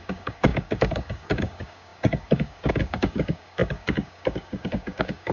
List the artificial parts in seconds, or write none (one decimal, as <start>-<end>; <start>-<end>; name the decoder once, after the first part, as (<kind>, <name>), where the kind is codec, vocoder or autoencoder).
0.0-5.3 (codec, DAC)